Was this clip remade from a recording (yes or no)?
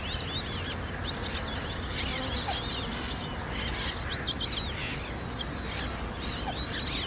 no